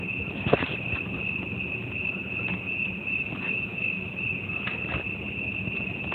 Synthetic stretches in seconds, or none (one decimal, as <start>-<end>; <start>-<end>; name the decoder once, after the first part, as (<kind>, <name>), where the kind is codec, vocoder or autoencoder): none

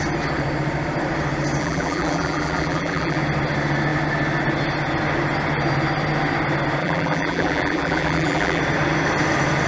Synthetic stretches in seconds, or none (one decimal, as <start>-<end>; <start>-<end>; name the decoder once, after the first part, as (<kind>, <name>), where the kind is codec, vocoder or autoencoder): 1.6-3.2 (vocoder, BigVGAN v2); 6.8-8.6

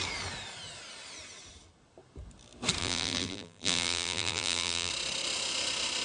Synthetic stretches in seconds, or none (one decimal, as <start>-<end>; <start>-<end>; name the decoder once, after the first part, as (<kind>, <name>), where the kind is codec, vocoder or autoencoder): 2.8-4.9 (vocoder, BigVGAN v2)